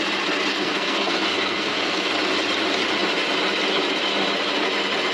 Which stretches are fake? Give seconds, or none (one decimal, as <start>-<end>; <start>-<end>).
0.5-2.1